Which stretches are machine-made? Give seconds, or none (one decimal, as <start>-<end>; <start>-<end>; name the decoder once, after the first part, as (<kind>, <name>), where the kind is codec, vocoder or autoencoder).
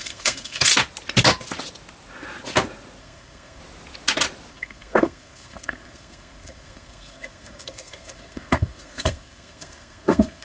0.0-0.7 (codec, SNAC); 3.0-3.6; 4.5-10.4